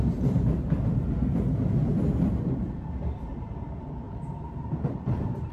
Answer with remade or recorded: remade